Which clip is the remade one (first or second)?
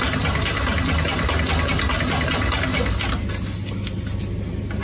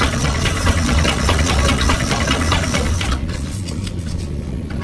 second